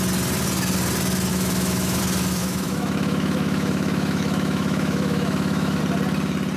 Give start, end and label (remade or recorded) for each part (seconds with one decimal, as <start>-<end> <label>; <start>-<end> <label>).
0.0-1.3 recorded; 1.3-2.0 remade; 2.0-2.4 recorded; 2.4-5.8 remade; 5.8-6.6 recorded